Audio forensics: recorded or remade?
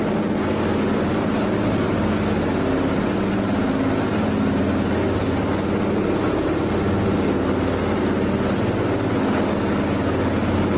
recorded